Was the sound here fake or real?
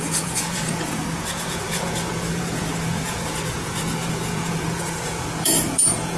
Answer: fake